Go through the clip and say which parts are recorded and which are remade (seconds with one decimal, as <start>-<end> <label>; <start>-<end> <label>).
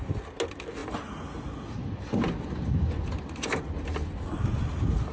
0.0-5.1 recorded